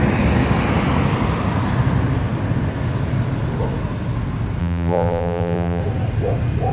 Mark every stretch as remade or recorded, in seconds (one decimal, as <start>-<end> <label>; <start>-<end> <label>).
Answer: 0.0-4.6 recorded; 4.6-5.8 remade; 5.8-6.7 recorded